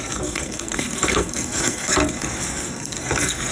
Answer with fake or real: fake